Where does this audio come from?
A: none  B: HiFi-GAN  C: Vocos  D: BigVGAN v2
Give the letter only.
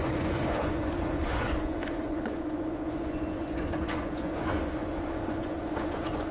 C